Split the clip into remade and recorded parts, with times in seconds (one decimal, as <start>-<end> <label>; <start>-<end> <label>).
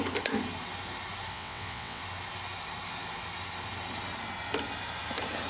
0.0-1.3 recorded; 1.3-2.0 remade; 2.0-5.5 recorded